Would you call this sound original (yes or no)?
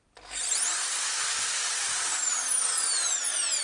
yes